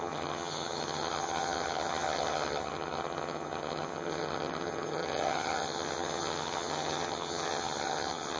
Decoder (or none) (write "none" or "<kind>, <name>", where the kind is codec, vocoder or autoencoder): vocoder, HiFi-GAN